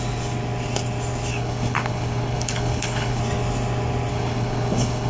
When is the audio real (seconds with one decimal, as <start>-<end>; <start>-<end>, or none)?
0.0-1.3; 3.2-4.1